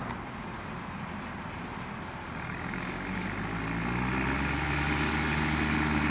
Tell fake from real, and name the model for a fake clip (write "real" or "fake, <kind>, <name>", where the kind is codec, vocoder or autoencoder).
real